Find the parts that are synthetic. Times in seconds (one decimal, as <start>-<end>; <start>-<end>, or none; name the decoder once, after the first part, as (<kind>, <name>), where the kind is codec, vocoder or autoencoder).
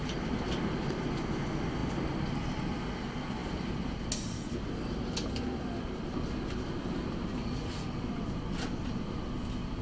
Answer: none